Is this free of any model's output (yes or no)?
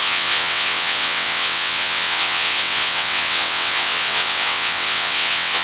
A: no